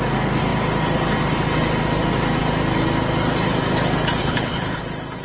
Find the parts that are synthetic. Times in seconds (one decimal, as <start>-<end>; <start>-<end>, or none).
4.2-4.8